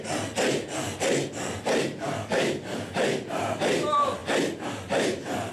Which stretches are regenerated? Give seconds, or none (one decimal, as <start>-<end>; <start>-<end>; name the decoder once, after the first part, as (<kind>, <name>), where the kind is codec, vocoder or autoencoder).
none